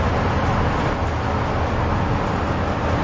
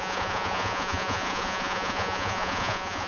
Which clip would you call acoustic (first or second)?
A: first